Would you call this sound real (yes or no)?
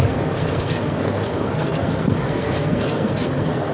no